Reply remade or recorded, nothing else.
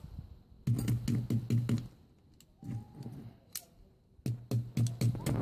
recorded